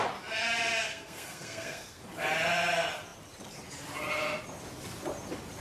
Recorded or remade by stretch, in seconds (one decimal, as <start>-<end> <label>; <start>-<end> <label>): 0.0-0.9 recorded; 0.9-2.0 remade; 2.0-5.6 recorded